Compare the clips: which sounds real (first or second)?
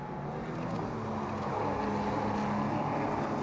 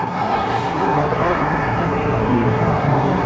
first